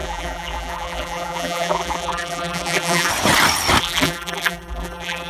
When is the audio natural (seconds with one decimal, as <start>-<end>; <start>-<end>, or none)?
3.1-3.8